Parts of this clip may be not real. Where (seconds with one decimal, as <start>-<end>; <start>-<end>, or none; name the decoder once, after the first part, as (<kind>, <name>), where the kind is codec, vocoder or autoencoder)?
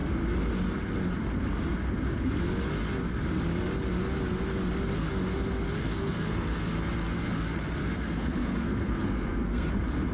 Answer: 5.8-6.6 (codec, SNAC); 7.8-9.7